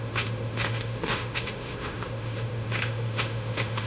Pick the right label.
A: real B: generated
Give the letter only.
B